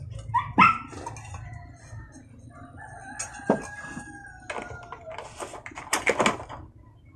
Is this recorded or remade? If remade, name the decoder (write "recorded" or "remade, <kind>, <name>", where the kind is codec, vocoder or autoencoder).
recorded